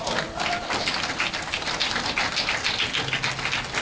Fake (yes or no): no